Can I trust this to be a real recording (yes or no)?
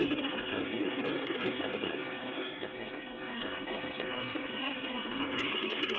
no